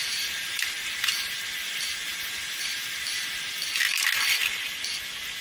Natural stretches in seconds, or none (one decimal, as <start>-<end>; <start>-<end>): 0.7-5.4